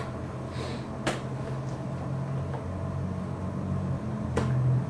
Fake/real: real